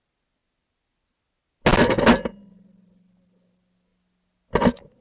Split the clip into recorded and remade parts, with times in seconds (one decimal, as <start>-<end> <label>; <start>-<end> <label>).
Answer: 0.0-5.0 recorded